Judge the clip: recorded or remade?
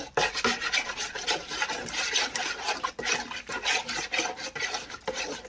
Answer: recorded